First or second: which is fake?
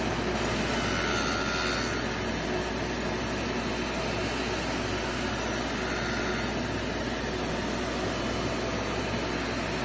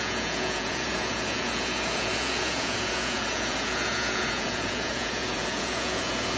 second